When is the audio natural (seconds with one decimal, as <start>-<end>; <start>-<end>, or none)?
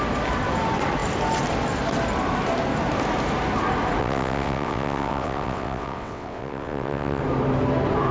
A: 0.0-4.0; 7.2-8.1